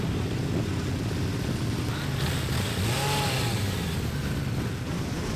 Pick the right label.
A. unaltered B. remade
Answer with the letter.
A